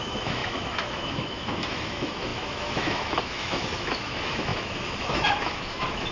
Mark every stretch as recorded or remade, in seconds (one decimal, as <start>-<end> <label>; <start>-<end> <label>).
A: 0.0-6.1 remade